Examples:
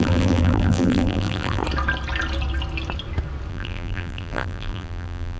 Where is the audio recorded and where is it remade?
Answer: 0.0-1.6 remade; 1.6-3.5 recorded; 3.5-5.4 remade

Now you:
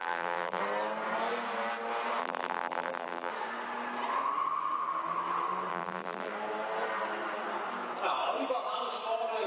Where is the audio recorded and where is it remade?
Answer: 0.0-0.6 remade; 0.6-2.2 recorded; 2.2-3.3 remade; 3.3-5.7 recorded; 5.7-6.3 remade; 6.3-9.5 recorded

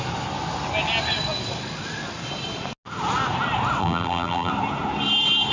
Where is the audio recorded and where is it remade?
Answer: 0.0-3.8 recorded; 3.8-4.5 remade; 4.5-5.5 recorded

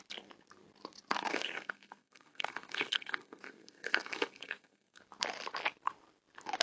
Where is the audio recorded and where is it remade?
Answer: 0.0-1.3 recorded; 1.3-5.0 remade; 5.0-6.6 recorded